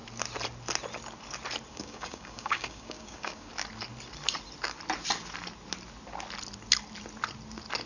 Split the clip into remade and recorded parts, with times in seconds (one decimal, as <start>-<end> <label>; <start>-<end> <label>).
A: 0.0-1.7 recorded; 1.7-3.5 remade; 3.5-7.9 recorded